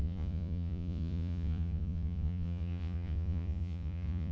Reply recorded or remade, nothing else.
remade